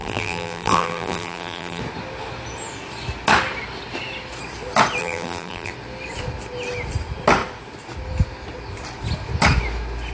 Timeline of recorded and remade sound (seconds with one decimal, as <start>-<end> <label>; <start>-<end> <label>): 0.0-1.8 remade; 1.8-5.0 recorded; 5.0-5.7 remade; 5.7-10.1 recorded